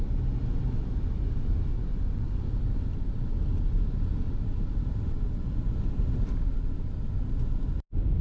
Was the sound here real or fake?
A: real